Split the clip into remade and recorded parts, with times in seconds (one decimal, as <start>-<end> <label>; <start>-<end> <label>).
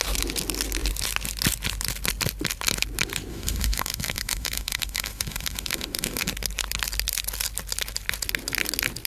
0.0-3.3 recorded; 3.3-6.3 remade; 6.3-9.1 recorded